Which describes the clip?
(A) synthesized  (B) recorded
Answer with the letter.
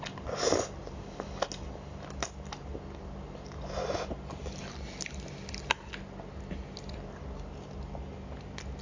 B